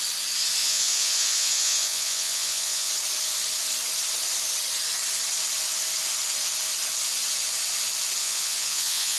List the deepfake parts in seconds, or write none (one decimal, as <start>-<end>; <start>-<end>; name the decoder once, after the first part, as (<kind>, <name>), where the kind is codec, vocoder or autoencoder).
0.6-2.9 (vocoder, Vocos); 8.2-9.2